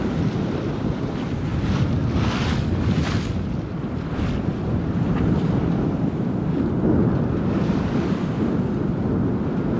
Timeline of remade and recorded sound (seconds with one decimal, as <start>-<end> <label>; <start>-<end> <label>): 0.0-1.5 recorded; 1.5-6.6 remade; 6.6-9.8 recorded